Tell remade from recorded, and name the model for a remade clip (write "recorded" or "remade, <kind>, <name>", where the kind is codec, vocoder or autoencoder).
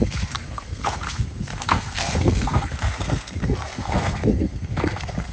remade, codec, SNAC